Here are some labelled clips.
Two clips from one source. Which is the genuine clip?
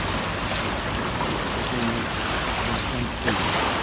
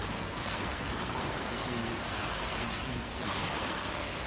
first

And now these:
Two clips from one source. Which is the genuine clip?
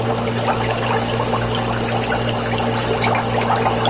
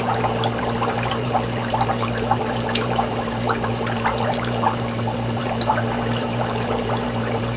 first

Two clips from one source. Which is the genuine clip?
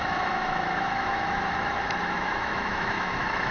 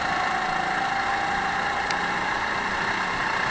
second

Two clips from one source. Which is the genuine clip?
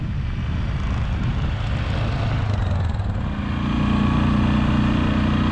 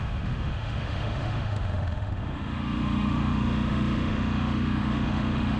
first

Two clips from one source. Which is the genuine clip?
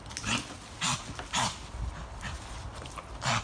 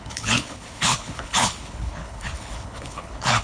first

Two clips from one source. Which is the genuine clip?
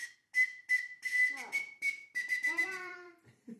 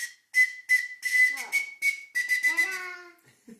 second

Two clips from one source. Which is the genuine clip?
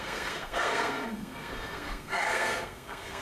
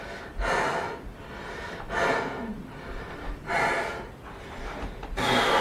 second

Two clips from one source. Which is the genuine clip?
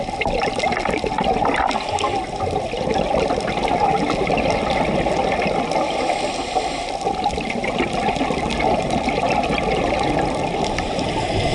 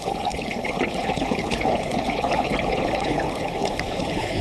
first